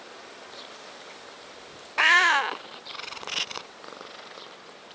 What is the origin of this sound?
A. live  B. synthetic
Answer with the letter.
B